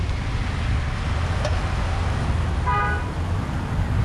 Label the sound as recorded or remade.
recorded